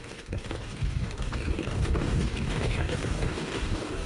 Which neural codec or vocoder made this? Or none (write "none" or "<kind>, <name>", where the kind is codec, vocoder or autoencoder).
codec, DAC